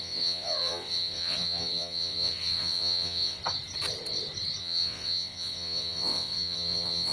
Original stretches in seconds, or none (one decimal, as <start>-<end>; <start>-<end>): 3.4-4.6

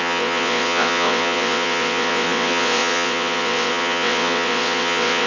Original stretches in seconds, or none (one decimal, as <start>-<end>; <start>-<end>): none

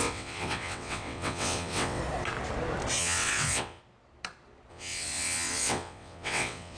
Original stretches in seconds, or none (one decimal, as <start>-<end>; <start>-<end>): 2.0-3.0; 3.8-4.7

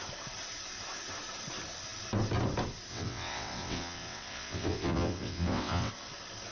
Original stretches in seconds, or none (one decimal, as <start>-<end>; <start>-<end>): 0.0-2.9; 5.9-6.5